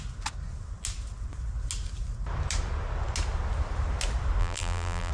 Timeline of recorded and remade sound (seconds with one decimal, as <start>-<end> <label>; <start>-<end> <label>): 0.0-4.4 recorded; 4.4-5.1 remade